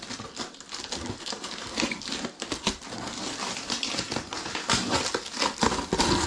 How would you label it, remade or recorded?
recorded